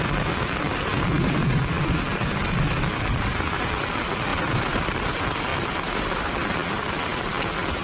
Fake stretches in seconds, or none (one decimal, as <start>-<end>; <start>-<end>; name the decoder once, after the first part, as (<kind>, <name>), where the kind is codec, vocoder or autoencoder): 4.3-5.0 (vocoder, BigVGAN v2); 5.5-6.3